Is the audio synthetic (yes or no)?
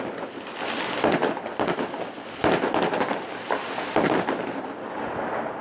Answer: no